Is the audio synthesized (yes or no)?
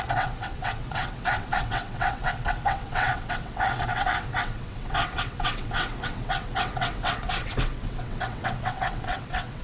yes